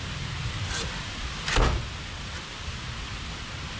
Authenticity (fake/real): real